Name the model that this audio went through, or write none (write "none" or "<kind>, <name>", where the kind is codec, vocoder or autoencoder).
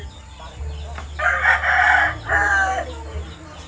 none